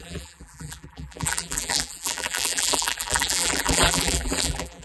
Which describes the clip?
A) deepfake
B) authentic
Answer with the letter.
A